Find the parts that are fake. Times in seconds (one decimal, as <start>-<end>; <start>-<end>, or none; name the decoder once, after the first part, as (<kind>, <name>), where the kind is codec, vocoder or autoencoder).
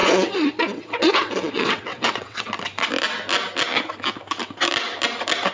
0.0-2.5 (vocoder, WaveNeXt)